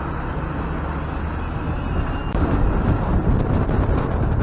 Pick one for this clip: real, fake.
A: real